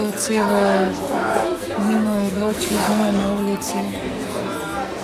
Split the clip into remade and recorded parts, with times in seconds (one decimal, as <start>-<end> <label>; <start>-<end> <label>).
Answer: 0.0-5.0 remade